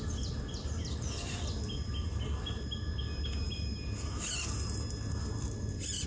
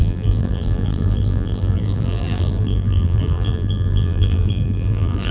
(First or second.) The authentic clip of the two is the first